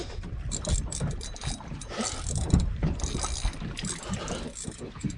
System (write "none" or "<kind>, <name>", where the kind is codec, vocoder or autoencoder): none